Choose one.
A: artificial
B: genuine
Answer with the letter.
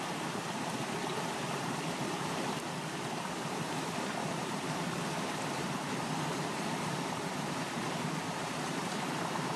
A